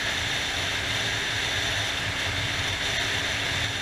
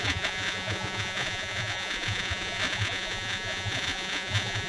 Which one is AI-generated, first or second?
second